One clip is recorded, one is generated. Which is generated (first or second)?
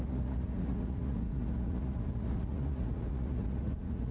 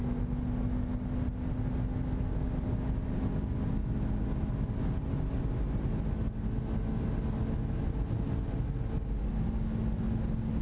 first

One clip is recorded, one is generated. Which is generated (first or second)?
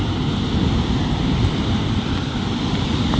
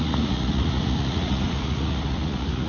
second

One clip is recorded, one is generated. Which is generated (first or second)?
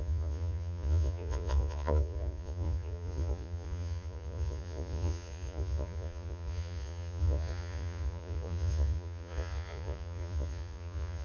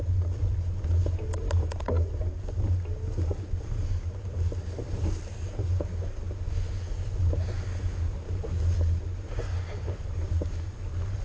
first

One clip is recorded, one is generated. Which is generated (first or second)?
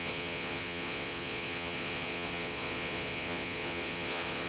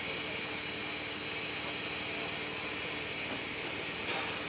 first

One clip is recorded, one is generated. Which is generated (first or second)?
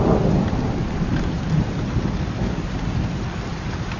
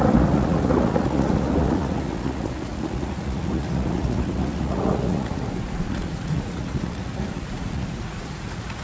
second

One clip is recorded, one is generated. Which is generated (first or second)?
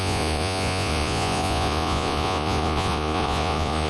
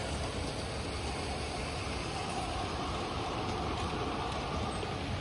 first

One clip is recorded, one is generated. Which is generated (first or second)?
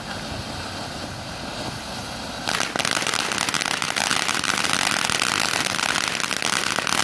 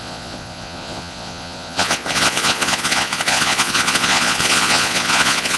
second